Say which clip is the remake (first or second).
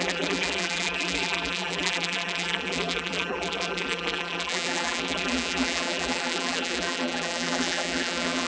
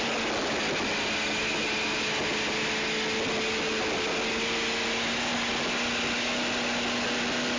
first